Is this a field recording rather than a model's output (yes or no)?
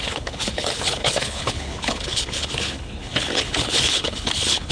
no